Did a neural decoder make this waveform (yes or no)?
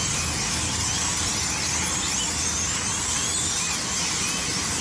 no